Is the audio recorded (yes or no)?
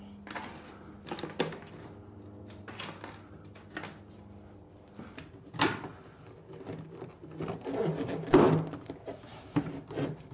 yes